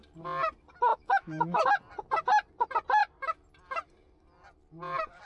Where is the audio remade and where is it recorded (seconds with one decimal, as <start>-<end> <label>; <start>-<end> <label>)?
0.0-0.9 recorded; 0.9-1.6 remade; 1.6-5.3 recorded